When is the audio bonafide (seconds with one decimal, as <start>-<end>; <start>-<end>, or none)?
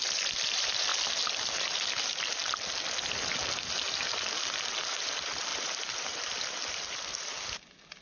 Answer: 0.9-1.4; 2.4-5.1